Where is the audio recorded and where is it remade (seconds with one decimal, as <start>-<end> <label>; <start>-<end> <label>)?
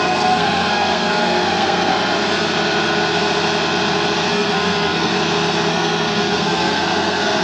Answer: 0.0-1.9 remade; 1.9-4.3 recorded; 4.3-5.1 remade; 5.1-5.7 recorded; 5.7-7.4 remade